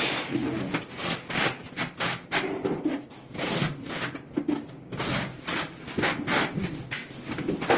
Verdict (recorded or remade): recorded